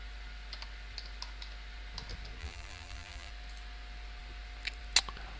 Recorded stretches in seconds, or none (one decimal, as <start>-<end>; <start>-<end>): 0.0-2.4; 3.3-5.4